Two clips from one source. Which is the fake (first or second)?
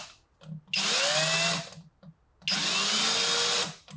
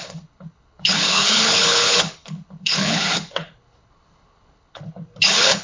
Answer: second